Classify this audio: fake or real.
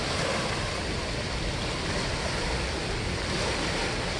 real